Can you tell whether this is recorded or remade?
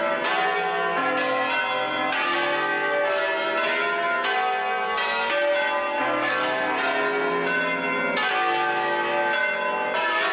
recorded